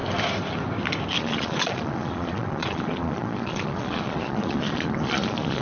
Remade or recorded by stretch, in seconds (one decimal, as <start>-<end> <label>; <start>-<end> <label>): 0.0-1.2 recorded; 1.2-5.6 remade